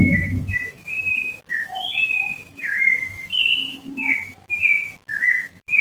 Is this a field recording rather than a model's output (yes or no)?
no